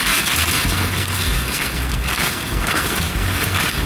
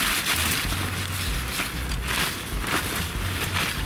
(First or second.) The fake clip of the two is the first